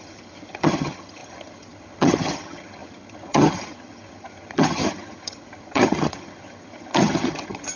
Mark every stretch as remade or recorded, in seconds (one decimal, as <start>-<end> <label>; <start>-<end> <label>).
0.0-7.8 remade

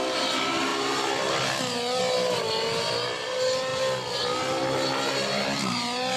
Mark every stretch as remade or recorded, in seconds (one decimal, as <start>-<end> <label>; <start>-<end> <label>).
0.0-6.2 recorded

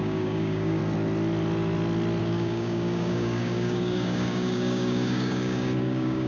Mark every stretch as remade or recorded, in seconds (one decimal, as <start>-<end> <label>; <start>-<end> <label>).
0.0-0.8 remade; 0.8-2.2 recorded; 2.2-6.3 remade

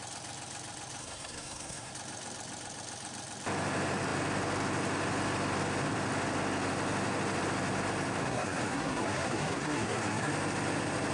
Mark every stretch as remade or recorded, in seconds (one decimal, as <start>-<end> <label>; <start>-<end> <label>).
0.0-1.0 recorded; 1.0-1.9 remade; 1.9-8.2 recorded; 8.2-10.3 remade; 10.3-11.1 recorded

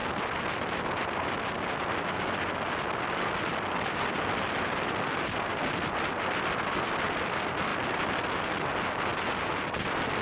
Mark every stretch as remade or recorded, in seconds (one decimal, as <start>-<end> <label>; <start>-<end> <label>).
0.0-0.7 remade; 0.7-10.2 recorded

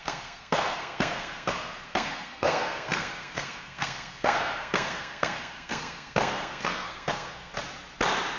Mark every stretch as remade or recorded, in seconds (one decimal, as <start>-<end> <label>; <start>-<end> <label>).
0.0-7.5 remade; 7.5-8.4 recorded

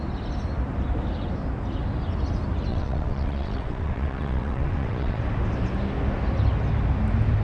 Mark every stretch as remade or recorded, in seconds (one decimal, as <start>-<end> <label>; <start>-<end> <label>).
0.0-2.7 recorded; 2.7-5.2 remade; 5.2-7.4 recorded

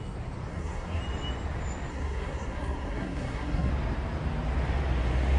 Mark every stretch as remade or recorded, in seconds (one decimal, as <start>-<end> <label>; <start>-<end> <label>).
0.0-0.5 recorded; 0.5-1.0 remade; 1.0-1.9 recorded; 1.9-3.7 remade; 3.7-5.4 recorded